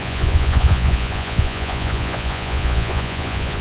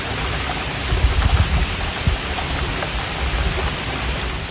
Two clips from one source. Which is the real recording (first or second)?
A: second